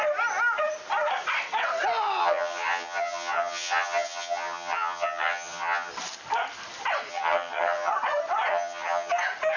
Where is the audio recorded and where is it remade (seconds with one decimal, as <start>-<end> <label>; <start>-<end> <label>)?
0.0-2.2 recorded; 2.2-5.9 remade; 5.9-7.1 recorded; 7.1-7.9 remade; 7.9-8.5 recorded; 8.5-9.1 remade; 9.1-9.6 recorded